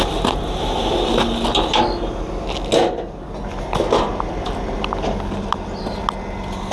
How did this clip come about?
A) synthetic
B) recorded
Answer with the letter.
B